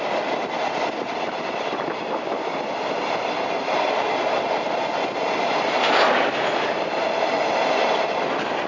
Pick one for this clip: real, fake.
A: real